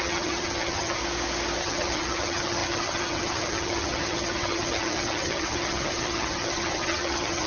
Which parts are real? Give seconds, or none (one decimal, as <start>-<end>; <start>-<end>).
1.0-1.6